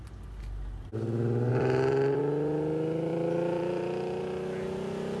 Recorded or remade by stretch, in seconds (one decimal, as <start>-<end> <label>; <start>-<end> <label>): 0.0-1.5 recorded; 1.5-2.2 remade; 2.2-3.1 recorded; 3.1-4.2 remade; 4.2-5.2 recorded